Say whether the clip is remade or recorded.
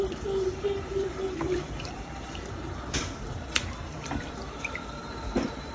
remade